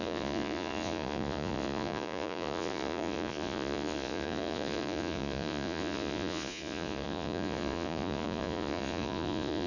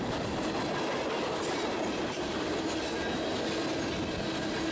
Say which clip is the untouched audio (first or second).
second